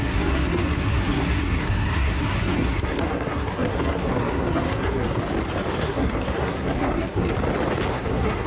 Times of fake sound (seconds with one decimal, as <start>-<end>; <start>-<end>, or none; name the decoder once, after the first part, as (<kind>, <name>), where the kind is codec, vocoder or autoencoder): 0.0-5.2 (codec, SNAC); 5.8-7.3; 7.9-8.5